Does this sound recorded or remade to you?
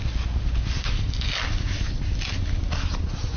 recorded